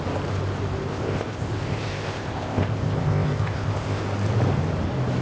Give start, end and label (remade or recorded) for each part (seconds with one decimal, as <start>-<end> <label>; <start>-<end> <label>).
0.0-0.9 recorded; 0.9-4.0 remade; 4.0-5.2 recorded